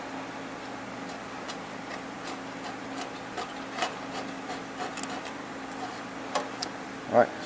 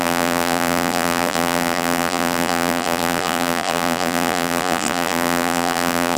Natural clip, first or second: first